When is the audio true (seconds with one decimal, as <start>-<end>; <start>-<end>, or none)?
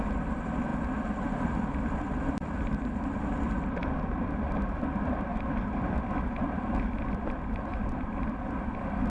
5.3-7.0